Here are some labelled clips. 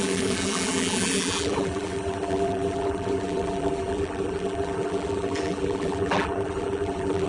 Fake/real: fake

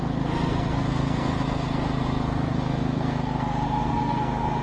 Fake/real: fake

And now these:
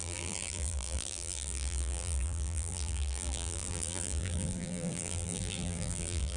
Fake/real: fake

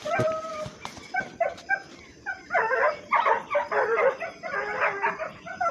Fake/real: real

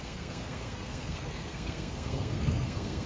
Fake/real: fake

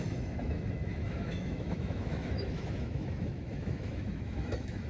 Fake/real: fake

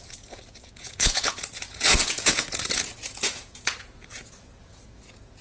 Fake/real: fake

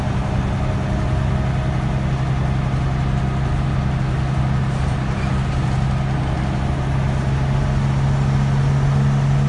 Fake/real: real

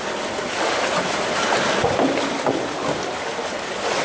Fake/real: real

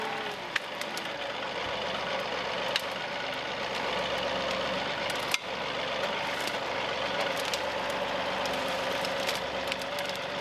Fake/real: real